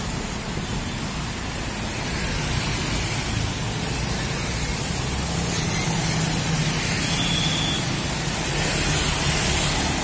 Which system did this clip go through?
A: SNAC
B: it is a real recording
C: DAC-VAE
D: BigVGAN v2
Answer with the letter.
B